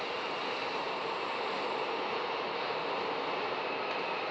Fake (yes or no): no